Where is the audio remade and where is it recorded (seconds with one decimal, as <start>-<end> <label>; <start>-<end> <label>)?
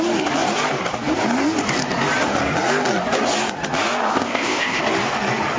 0.0-4.0 recorded; 4.0-4.8 remade; 4.8-5.6 recorded